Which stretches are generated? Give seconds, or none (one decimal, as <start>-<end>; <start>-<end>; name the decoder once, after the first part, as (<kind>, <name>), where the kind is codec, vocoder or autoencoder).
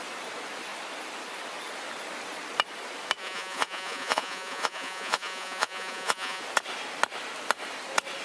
3.2-6.4 (vocoder, Vocos)